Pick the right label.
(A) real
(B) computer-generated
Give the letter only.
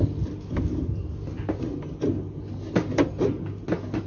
A